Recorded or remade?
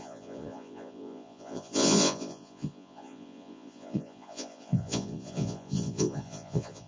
remade